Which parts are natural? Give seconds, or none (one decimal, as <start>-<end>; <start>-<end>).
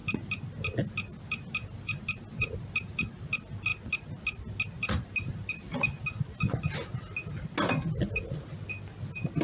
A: 0.0-9.4